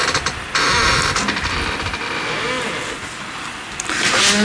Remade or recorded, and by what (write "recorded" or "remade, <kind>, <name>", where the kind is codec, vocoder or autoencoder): recorded